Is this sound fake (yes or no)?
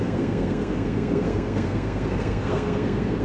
yes